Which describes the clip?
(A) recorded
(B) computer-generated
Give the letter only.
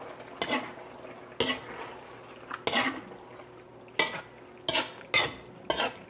A